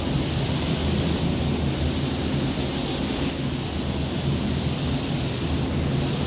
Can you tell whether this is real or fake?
real